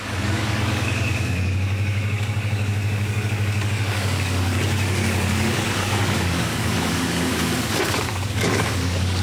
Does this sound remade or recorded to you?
remade